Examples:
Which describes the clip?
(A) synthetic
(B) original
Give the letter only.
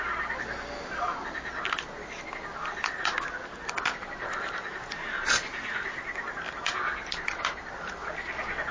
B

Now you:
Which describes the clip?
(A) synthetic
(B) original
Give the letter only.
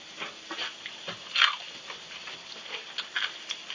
B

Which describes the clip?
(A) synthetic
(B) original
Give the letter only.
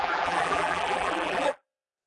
A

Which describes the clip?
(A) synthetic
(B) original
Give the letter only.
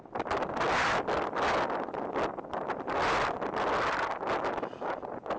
B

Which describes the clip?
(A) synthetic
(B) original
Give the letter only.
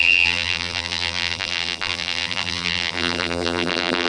A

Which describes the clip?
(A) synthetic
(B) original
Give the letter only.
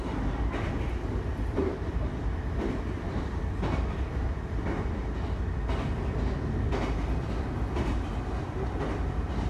B